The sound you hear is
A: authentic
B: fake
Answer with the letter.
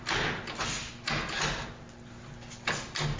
A